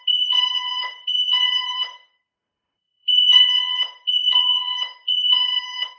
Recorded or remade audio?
remade